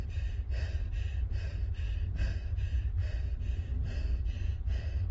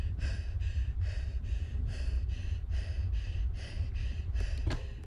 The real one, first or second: first